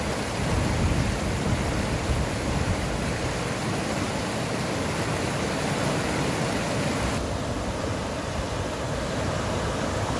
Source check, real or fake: real